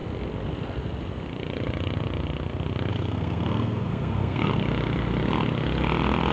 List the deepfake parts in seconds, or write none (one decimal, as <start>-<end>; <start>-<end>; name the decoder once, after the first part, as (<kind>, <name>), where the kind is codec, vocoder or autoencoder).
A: 2.9-4.5 (codec, SNAC)